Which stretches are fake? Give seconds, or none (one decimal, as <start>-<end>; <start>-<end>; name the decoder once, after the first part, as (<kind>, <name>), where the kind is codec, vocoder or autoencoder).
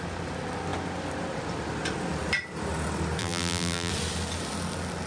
3.2-3.9 (vocoder, BigVGAN v2)